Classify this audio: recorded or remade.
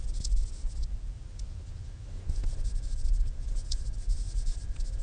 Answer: recorded